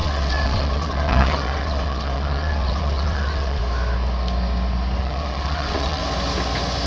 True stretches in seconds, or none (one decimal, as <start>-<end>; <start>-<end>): 3.6-5.0; 6.0-6.9